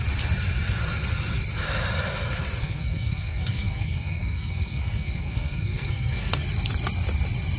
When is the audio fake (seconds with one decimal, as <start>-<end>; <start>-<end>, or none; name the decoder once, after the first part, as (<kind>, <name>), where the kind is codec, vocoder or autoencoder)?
2.6-6.3 (codec, SNAC)